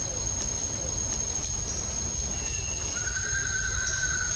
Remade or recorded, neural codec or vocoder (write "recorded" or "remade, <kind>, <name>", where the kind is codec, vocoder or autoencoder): recorded